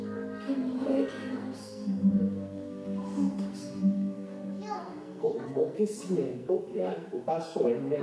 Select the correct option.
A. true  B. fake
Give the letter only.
B